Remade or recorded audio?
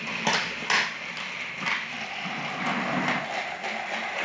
recorded